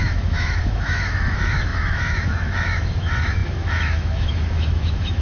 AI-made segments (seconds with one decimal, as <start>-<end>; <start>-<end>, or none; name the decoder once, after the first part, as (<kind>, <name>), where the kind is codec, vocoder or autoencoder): 0.0-5.2 (autoencoder, DAC-VAE)